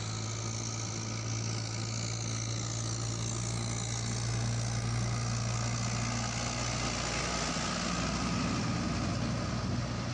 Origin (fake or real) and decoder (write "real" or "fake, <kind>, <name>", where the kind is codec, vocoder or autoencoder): real